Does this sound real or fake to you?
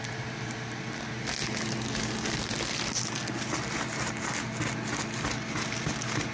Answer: real